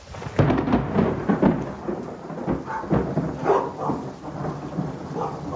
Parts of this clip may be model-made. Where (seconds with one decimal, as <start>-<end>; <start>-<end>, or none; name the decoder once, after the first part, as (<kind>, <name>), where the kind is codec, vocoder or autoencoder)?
none